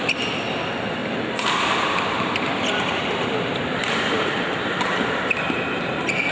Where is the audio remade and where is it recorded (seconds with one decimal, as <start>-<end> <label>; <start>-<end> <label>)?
0.0-1.0 recorded; 1.0-4.8 remade; 4.8-6.3 recorded